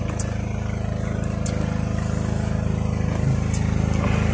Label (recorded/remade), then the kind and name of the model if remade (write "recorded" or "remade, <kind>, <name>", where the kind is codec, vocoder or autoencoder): recorded